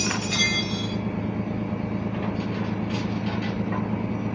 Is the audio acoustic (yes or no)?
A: yes